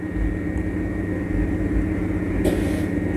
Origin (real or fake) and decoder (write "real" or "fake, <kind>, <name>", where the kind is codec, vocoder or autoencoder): real